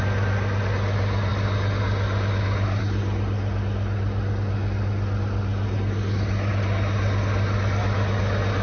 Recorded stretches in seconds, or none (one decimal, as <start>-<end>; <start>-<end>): 0.0-8.6